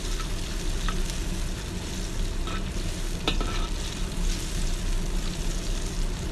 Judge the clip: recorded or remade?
recorded